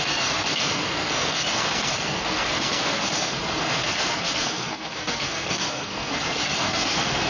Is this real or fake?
fake